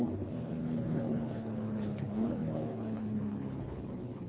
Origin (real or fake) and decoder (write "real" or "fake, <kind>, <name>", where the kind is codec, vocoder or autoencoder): fake, codec, HILCodec